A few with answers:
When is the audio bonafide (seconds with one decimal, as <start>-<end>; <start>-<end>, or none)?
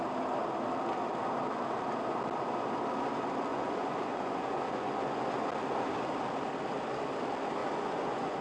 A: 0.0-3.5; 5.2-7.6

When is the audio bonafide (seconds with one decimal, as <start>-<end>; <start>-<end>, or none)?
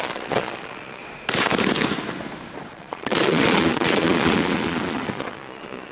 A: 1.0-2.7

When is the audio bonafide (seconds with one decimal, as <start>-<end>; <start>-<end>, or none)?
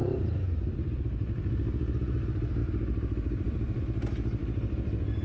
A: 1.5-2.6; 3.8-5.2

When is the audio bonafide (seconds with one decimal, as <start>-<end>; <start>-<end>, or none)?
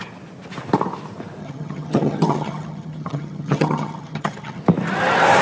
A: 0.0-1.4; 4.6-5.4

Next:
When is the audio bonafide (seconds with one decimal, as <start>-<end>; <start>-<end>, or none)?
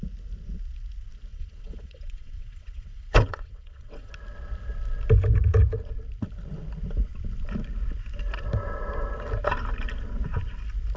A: 0.0-1.3; 4.1-11.0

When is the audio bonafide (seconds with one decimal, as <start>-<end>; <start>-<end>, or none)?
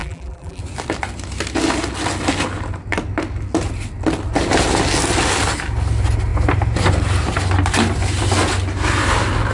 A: 0.6-9.5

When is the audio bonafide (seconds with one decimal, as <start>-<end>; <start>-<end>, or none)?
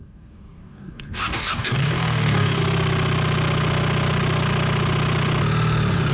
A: 2.6-6.1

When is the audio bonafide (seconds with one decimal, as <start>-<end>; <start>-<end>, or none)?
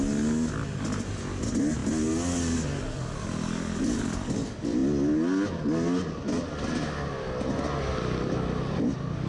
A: 0.0-9.3